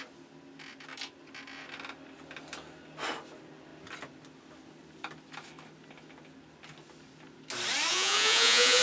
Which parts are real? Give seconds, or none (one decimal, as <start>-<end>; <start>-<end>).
0.0-7.9